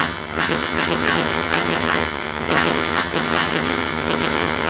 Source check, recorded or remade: remade